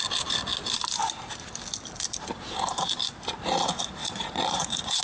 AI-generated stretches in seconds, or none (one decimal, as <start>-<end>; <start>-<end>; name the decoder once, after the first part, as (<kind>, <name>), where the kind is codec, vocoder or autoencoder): 4.0-5.0 (vocoder, Vocos)